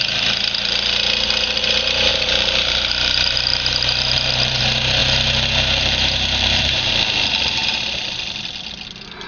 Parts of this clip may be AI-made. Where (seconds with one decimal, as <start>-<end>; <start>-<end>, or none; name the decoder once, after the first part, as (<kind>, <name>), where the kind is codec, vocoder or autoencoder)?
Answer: 2.1-4.6 (vocoder, BigVGAN v2); 5.0-6.9